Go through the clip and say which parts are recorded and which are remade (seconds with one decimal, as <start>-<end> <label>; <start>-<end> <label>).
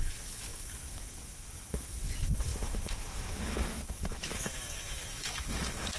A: 0.0-6.0 remade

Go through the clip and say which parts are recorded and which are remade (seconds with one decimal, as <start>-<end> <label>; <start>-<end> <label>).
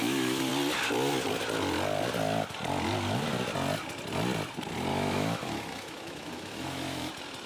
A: 0.0-0.5 remade; 0.5-4.9 recorded; 4.9-7.1 remade; 7.1-7.5 recorded